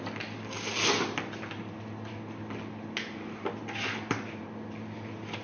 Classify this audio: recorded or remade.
recorded